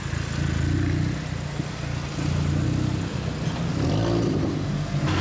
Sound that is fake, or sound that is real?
real